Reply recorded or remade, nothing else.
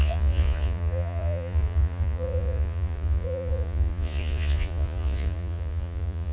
remade